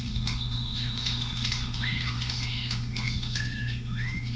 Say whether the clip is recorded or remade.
remade